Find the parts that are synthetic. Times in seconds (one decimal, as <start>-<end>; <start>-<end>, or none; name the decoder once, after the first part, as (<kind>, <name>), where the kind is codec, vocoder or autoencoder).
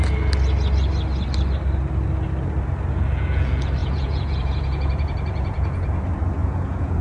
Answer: 3.8-6.0 (vocoder, Vocos); 6.4-7.0